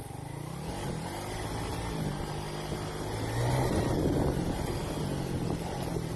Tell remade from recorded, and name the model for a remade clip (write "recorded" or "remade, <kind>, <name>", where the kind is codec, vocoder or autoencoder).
recorded